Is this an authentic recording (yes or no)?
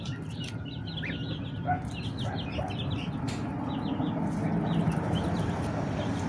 yes